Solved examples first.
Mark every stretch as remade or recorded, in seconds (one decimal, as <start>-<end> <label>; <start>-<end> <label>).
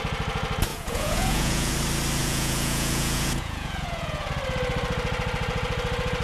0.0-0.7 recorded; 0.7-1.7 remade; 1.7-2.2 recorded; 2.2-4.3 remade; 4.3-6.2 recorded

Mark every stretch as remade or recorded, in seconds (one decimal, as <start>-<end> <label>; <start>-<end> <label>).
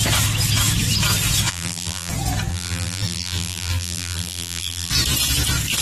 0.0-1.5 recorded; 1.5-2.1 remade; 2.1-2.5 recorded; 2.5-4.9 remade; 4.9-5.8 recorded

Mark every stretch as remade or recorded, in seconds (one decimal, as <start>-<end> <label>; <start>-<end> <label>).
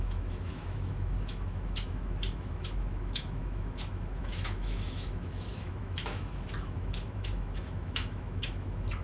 0.0-9.0 remade